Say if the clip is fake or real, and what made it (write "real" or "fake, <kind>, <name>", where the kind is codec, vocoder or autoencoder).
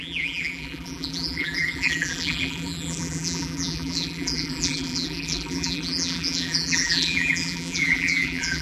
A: fake, vocoder, BigVGAN v2